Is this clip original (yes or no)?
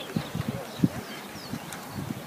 yes